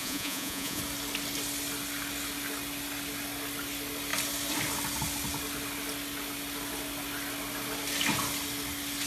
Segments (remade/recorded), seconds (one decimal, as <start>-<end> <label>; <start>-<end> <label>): 0.0-0.8 remade; 0.8-9.1 recorded

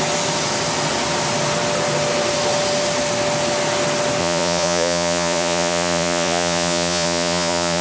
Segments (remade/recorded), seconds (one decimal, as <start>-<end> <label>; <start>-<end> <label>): 0.0-4.2 recorded; 4.2-7.8 remade

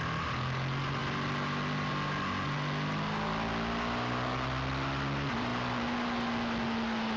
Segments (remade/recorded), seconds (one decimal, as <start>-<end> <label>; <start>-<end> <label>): 0.0-7.2 recorded

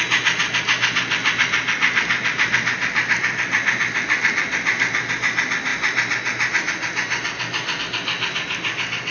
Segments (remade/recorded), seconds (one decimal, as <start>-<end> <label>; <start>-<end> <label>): 0.0-9.1 recorded

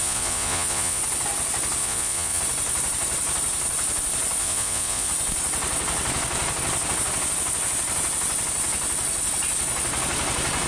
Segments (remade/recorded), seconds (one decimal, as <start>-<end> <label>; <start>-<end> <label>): 0.0-1.0 remade; 1.0-1.8 recorded; 1.8-2.4 remade; 2.4-4.4 recorded; 4.4-5.1 remade; 5.1-10.7 recorded

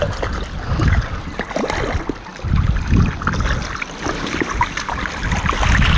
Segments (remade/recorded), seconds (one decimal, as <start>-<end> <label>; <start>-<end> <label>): 0.0-6.0 recorded

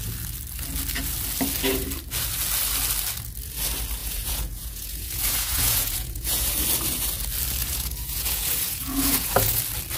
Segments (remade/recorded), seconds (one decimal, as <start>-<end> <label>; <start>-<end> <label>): 0.0-4.0 recorded; 4.0-6.5 remade; 6.5-7.6 recorded; 7.6-9.6 remade; 9.6-10.0 recorded